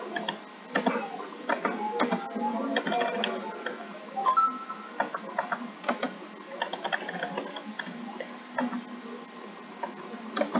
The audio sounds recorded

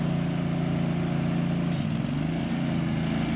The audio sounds recorded